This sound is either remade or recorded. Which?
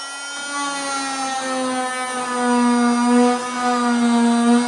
recorded